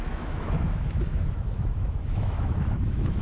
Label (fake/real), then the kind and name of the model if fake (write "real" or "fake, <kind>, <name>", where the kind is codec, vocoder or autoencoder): fake, autoencoder, DAC-VAE